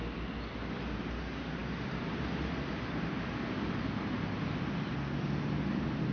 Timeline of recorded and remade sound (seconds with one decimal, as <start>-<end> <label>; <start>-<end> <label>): 0.0-6.1 recorded